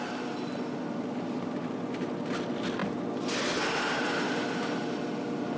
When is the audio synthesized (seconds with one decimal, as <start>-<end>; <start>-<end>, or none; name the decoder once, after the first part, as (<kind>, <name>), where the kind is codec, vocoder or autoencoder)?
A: none

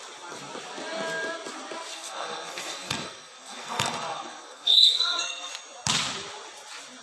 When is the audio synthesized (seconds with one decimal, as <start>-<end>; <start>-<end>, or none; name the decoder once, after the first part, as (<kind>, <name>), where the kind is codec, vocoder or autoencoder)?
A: 1.9-5.5 (codec, SNAC)

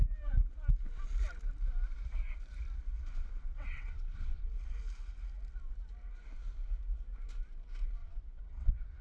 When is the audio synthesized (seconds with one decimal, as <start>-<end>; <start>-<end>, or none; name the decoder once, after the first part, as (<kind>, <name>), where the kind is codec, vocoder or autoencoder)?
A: 3.4-4.5 (vocoder, WaveNeXt); 8.0-9.0

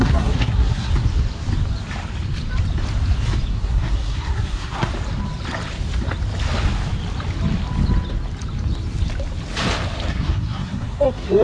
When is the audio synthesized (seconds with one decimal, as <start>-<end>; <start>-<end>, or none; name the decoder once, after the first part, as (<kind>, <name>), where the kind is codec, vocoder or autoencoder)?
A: 0.0-0.9 (codec, SNAC); 3.5-4.9; 10.1-11.4

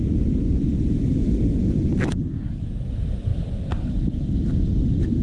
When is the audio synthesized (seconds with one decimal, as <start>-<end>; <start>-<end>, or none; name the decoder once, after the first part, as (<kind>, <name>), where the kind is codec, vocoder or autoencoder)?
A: none

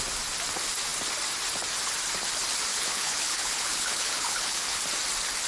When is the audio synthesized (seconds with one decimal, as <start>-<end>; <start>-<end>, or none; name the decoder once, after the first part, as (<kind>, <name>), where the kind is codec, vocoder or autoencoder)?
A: 2.7-4.8 (codec, HILCodec)

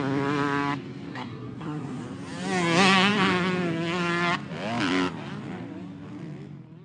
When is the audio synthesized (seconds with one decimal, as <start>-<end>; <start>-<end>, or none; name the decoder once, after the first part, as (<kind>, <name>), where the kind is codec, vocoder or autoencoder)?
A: 1.1-2.0 (codec, SNAC)

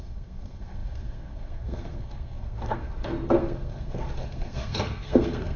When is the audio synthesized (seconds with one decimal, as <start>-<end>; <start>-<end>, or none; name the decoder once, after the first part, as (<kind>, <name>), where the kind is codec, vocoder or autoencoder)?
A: 0.0-5.6 (codec, SNAC)